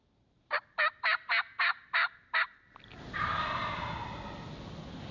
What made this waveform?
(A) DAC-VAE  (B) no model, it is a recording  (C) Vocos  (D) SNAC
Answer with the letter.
B